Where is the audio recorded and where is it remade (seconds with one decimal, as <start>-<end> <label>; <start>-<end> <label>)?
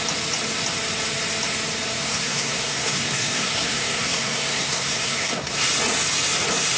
0.0-2.0 recorded; 2.0-5.6 remade; 5.6-6.8 recorded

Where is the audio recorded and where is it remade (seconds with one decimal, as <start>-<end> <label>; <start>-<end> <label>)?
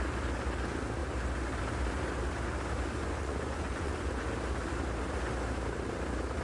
0.0-3.0 recorded; 3.0-4.1 remade; 4.1-6.4 recorded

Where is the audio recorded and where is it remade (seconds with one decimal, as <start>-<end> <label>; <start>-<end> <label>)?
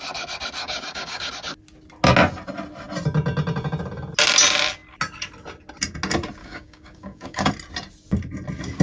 0.0-0.6 recorded; 0.6-1.3 remade; 1.3-6.4 recorded; 6.4-7.5 remade; 7.5-8.8 recorded